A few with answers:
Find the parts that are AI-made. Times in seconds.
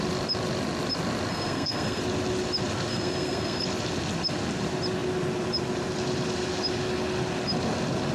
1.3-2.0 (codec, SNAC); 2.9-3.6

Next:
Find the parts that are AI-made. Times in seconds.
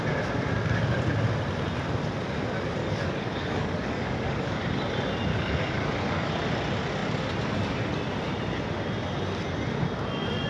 2.8-4.6 (codec, DAC); 5.3-6.3